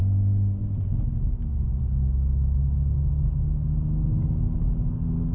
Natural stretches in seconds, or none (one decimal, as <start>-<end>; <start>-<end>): 0.0-5.3